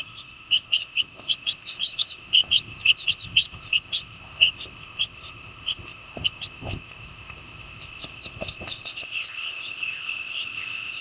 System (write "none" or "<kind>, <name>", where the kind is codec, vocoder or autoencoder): codec, ZipCodec